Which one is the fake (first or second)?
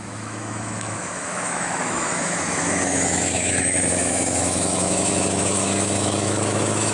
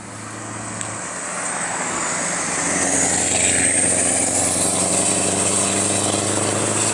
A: first